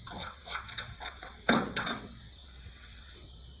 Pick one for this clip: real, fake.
fake